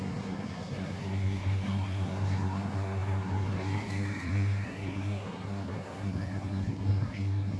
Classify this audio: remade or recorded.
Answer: remade